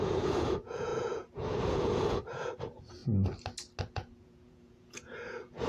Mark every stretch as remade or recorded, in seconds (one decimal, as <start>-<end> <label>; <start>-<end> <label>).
0.0-3.0 remade; 3.0-3.8 recorded; 3.8-5.7 remade